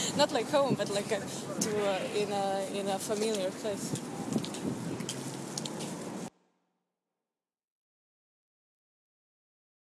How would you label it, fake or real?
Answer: real